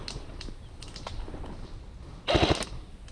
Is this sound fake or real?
real